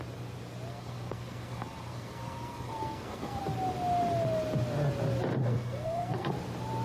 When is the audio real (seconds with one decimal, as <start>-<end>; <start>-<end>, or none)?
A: 0.0-0.7; 3.4-5.4; 6.3-6.8